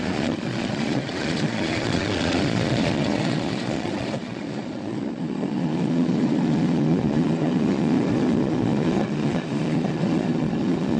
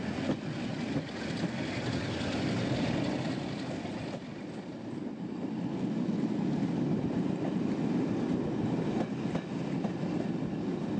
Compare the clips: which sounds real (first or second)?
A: second